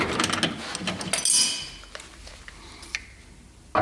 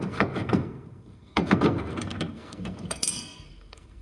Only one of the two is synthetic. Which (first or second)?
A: second